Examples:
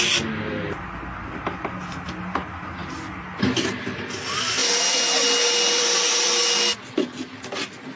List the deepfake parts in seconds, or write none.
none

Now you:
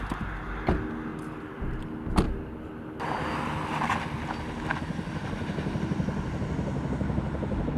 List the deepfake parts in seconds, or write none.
none

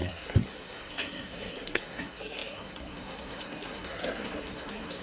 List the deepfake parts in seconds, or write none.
0.0-5.0

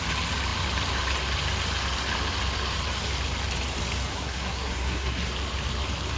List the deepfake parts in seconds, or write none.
4.1-5.3